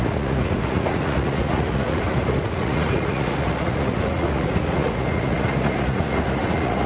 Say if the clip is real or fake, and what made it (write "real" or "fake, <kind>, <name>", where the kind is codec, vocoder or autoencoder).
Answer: fake, vocoder, Vocos